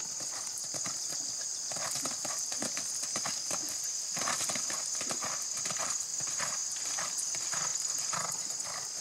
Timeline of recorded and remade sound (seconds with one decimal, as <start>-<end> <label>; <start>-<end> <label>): 0.0-9.0 recorded